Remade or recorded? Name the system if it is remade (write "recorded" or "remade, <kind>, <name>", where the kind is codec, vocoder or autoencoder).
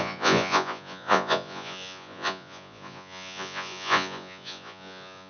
remade, vocoder, Vocos